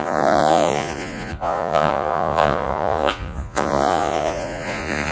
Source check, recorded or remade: remade